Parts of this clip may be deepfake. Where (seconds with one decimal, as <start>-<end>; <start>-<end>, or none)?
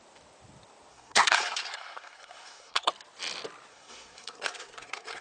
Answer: 0.9-2.9; 3.7-5.2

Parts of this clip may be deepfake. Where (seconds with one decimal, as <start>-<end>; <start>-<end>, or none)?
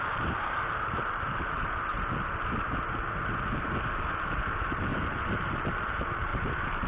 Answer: 0.0-1.9; 4.1-4.9; 5.4-6.9